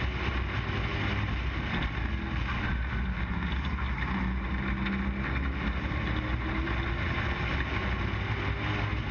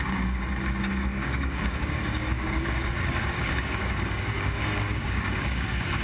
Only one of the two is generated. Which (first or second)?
second